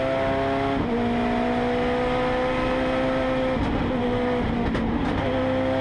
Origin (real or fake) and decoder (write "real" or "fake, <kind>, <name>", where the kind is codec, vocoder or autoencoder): real